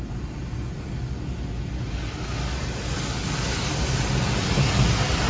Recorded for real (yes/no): yes